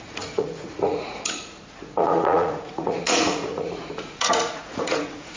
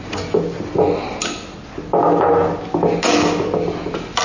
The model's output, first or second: first